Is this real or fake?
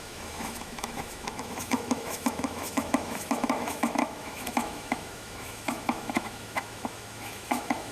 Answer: fake